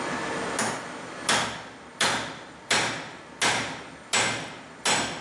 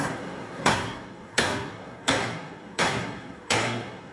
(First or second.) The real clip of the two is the first